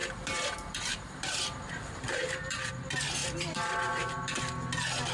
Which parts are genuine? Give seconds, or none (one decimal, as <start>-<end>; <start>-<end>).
2.7-3.2; 4.4-5.1